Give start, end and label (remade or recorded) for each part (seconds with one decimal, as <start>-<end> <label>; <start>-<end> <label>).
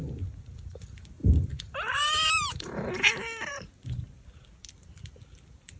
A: 0.0-1.2 recorded; 1.2-3.1 remade; 3.1-3.5 recorded; 3.5-4.1 remade; 4.1-5.8 recorded